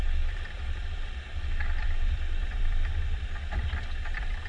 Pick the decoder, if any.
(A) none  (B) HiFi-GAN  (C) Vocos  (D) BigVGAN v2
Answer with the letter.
D